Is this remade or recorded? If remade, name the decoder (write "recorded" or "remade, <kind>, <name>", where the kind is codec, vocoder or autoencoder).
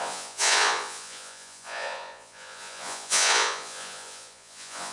remade, vocoder, Vocos